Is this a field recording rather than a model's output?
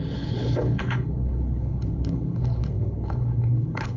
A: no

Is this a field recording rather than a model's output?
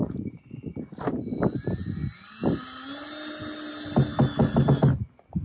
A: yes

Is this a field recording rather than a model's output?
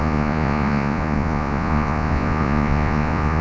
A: no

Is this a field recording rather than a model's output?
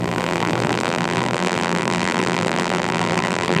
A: no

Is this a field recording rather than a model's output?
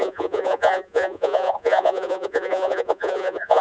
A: no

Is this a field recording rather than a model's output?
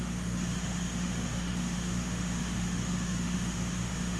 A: no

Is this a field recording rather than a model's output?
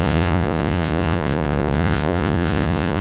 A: no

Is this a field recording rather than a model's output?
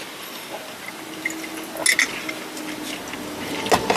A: yes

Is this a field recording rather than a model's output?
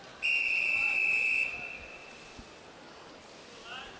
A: yes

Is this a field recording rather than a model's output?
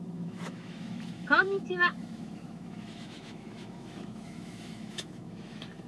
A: no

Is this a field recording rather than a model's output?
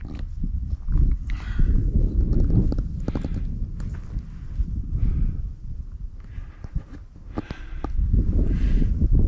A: yes